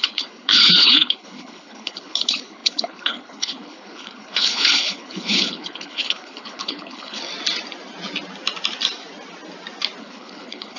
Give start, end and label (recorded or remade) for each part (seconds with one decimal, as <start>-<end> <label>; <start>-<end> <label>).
0.0-7.2 remade; 7.2-10.0 recorded; 10.0-10.8 remade